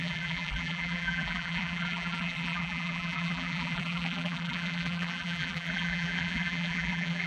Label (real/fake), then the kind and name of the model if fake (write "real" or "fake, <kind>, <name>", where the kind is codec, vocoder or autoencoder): fake, vocoder, BigVGAN v2